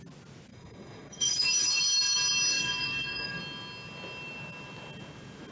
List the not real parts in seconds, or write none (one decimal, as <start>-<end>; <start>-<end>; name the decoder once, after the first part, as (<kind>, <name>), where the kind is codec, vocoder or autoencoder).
0.5-1.8 (codec, DAC); 2.5-3.4